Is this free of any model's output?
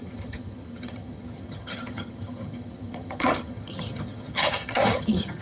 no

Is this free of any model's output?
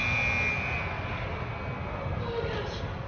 yes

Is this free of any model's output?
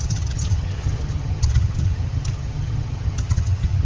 no